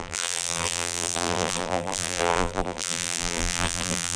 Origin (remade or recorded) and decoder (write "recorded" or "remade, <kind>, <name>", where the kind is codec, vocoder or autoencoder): remade, vocoder, BigVGAN v2